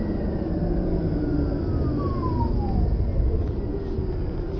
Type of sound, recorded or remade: recorded